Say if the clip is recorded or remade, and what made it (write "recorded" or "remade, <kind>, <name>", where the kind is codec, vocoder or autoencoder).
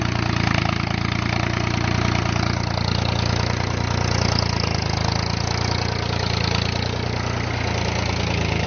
recorded